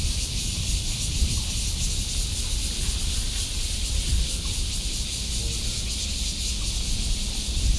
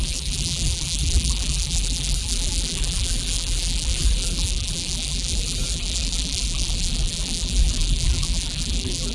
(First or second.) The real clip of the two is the first